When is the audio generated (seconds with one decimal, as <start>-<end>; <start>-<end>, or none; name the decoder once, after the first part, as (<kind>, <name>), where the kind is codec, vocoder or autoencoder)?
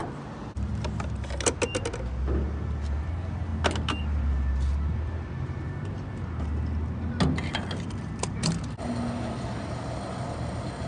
none